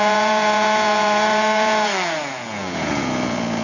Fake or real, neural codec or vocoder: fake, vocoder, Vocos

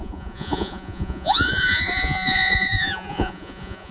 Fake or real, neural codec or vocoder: fake, vocoder, Vocos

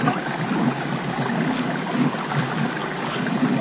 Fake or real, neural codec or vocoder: real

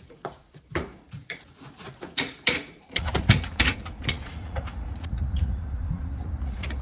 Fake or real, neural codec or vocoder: fake, vocoder, Vocos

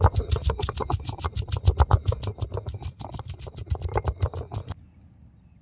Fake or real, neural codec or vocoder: real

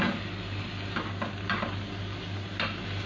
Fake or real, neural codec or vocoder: real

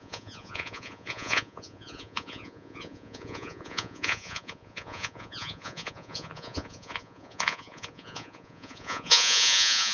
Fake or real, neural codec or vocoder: fake, vocoder, Vocos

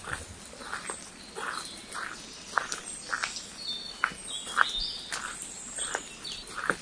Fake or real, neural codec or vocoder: real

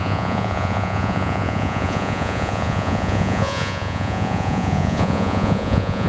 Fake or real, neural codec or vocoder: fake, vocoder, Vocos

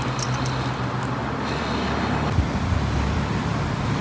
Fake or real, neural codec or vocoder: real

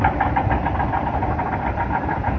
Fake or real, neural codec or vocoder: real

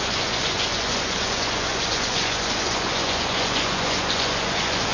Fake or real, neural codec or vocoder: fake, vocoder, Vocos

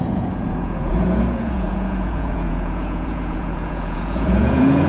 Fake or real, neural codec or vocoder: fake, vocoder, Vocos